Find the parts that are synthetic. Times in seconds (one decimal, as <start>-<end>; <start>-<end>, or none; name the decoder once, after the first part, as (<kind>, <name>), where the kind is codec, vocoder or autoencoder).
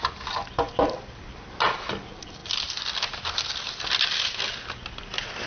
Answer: none